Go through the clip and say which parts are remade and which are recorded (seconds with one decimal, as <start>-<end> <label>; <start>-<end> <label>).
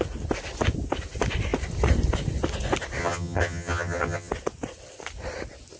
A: 0.0-3.0 recorded; 3.0-4.3 remade; 4.3-5.8 recorded